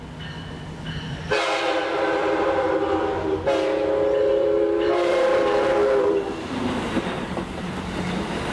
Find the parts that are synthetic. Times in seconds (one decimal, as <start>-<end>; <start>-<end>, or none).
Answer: 4.2-7.7